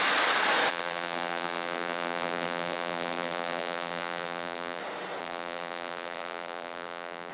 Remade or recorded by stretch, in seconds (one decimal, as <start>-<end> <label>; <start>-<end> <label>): 0.0-0.7 recorded; 0.7-4.8 remade; 4.8-5.2 recorded; 5.2-7.3 remade

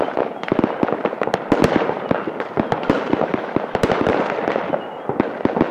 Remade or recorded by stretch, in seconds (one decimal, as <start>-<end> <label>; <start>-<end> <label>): 0.0-3.3 recorded; 3.3-4.1 remade; 4.1-5.7 recorded

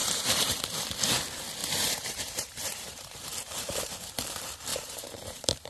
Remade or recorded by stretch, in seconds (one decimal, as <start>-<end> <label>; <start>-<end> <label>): 0.0-0.6 remade; 0.6-1.6 recorded; 1.6-3.9 remade; 3.9-4.7 recorded; 4.7-5.7 remade

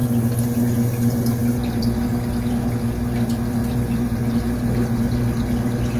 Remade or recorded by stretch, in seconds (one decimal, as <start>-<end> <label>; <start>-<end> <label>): 0.0-3.6 recorded; 3.6-4.3 remade; 4.3-6.0 recorded